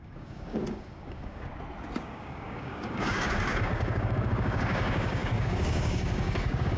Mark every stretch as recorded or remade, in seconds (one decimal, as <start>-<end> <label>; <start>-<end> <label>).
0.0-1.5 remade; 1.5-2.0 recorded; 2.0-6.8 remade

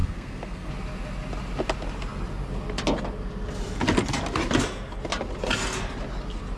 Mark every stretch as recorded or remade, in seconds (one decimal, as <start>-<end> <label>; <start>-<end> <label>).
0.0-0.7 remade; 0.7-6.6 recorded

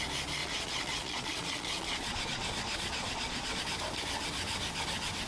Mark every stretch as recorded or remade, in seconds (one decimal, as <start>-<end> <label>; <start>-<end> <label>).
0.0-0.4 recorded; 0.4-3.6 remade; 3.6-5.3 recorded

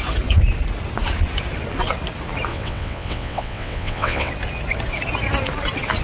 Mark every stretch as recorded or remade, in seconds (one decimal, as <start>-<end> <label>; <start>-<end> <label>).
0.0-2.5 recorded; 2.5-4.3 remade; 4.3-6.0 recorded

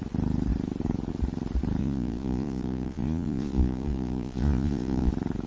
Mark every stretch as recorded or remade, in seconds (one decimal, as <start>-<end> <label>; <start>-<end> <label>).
0.0-1.8 recorded; 1.8-5.1 remade; 5.1-5.5 recorded